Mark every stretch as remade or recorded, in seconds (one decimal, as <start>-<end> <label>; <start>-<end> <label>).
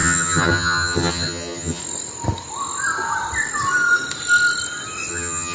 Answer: 0.0-1.8 remade; 1.8-5.1 recorded; 5.1-5.5 remade